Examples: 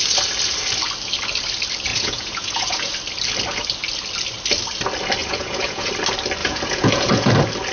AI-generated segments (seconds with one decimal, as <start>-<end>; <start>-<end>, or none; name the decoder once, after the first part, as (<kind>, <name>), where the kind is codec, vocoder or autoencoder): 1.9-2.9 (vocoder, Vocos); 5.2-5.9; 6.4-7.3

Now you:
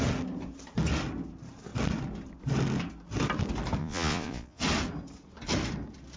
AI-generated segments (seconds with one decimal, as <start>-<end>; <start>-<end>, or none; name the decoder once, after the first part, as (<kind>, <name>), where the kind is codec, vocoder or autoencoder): 3.8-4.6 (vocoder, Vocos)

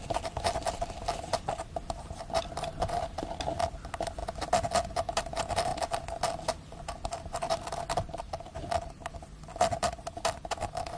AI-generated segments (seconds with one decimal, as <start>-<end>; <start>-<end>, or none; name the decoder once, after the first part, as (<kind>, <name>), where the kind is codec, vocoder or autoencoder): none

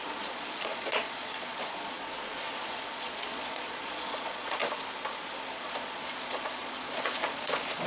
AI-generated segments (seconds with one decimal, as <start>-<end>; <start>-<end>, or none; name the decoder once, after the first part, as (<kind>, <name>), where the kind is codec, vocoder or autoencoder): 0.0-4.6 (vocoder, Vocos); 5.5-7.9

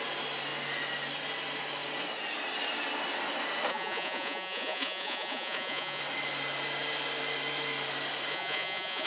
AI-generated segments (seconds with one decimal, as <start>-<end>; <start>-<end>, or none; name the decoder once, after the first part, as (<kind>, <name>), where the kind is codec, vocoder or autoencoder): 3.7-6.0 (vocoder, Vocos); 8.3-9.1

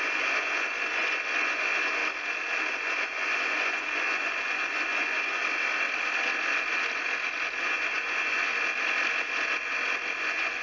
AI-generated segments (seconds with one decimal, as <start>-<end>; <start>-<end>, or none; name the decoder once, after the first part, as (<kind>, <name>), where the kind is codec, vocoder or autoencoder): 0.0-2.0 (vocoder, Vocos); 2.7-5.4; 7.6-8.5; 10.2-10.6

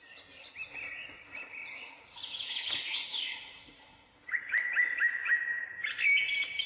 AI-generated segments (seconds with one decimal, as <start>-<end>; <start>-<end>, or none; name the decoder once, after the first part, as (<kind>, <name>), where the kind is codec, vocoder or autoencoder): 0.7-4.7 (vocoder, Vocos)